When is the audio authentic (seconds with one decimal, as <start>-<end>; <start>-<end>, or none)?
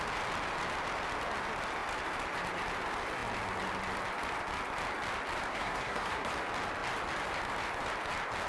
0.0-5.5; 6.3-8.5